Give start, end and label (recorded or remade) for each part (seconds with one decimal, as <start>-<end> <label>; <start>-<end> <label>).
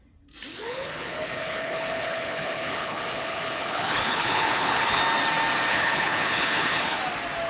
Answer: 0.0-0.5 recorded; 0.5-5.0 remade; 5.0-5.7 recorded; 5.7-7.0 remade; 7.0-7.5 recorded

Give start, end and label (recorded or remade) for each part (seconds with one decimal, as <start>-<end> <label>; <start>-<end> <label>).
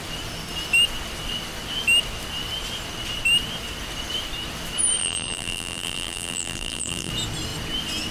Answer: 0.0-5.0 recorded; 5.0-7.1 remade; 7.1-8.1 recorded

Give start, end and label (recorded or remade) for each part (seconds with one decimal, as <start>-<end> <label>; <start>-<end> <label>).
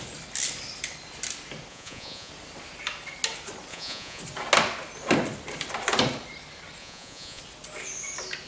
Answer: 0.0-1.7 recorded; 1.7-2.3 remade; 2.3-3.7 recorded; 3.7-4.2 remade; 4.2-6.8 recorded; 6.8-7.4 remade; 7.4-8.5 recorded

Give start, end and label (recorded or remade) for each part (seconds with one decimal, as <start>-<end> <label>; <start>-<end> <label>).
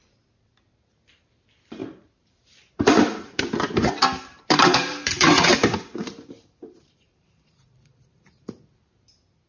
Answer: 0.0-1.8 recorded; 1.8-3.4 remade; 3.4-4.3 recorded; 4.3-8.5 remade; 8.5-9.5 recorded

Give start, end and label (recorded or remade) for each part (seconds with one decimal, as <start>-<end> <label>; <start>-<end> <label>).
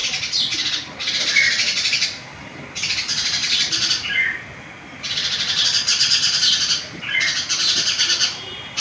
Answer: 0.0-1.2 recorded; 1.2-8.8 remade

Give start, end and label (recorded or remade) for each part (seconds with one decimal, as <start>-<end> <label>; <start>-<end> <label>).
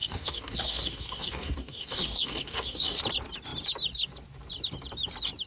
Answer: 0.0-3.0 remade; 3.0-5.5 recorded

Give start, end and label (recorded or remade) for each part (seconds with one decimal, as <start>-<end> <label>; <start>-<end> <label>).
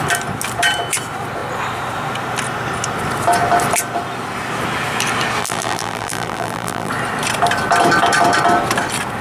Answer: 0.0-5.4 recorded; 5.4-6.9 remade; 6.9-9.2 recorded